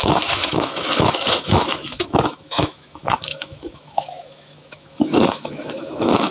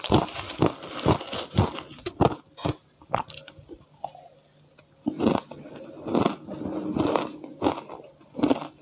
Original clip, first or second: second